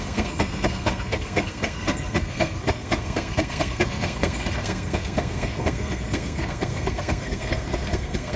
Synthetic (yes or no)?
yes